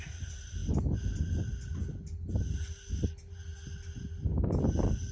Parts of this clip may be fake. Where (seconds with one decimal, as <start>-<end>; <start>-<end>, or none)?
none